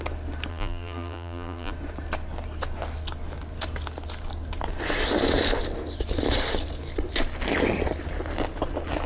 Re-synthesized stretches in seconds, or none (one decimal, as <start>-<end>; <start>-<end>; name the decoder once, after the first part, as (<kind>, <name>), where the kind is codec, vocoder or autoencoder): 0.5-1.7 (vocoder, BigVGAN v2)